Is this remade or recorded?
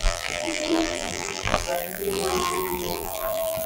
remade